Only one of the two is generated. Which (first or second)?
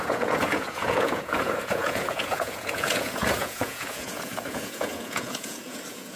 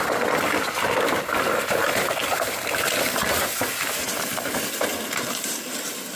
first